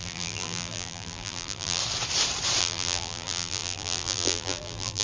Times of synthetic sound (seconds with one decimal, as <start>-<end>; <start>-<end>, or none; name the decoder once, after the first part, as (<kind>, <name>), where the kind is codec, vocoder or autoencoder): 0.0-1.8 (vocoder, BigVGAN v2); 2.6-5.0